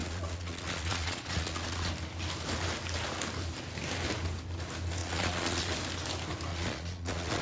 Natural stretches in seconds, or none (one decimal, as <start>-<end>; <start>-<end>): 1.9-5.0; 5.7-6.5

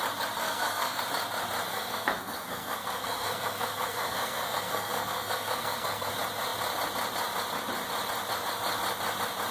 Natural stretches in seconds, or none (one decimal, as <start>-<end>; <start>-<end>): 0.0-0.4; 1.0-1.7; 6.1-9.5

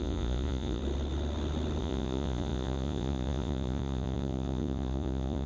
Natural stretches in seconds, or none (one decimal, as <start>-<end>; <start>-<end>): 0.8-1.8

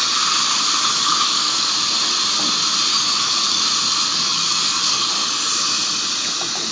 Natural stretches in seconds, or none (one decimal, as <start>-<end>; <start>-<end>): 0.0-0.9; 1.7-2.9; 3.6-4.1; 5.1-6.7

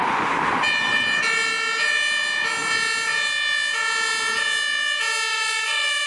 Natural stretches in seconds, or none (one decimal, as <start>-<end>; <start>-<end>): 0.0-5.3

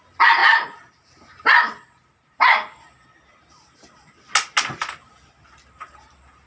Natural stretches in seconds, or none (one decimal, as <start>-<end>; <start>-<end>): 0.0-6.5